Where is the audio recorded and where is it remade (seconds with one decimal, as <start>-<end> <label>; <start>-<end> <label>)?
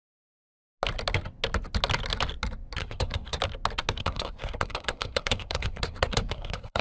0.0-2.8 recorded; 2.8-3.4 remade; 3.4-4.0 recorded; 4.0-6.8 remade